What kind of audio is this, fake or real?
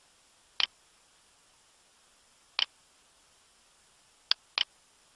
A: real